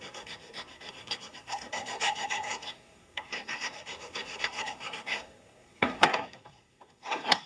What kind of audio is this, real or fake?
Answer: fake